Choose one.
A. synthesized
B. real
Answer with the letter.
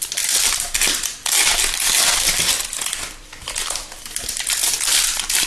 A